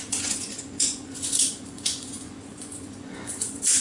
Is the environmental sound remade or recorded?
remade